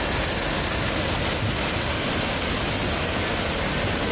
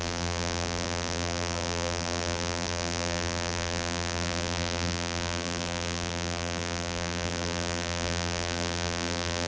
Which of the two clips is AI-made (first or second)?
second